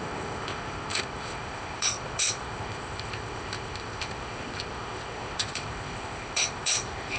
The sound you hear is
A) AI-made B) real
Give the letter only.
A